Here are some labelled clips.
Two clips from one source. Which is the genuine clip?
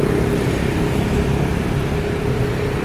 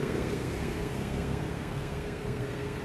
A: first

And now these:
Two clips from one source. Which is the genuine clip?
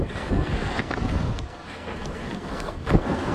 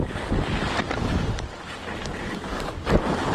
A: second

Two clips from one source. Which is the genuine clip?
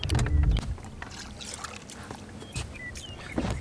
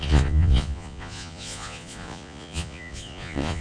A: first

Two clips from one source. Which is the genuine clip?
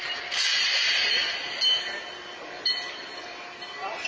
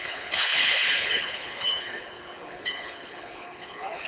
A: first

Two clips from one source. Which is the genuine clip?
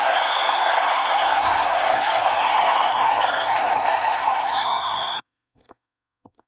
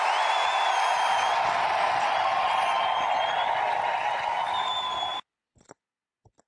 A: second